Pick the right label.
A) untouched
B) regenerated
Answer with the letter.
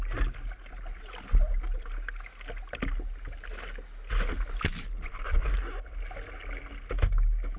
A